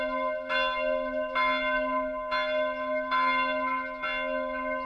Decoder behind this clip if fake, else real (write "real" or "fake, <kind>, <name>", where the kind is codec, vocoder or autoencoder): real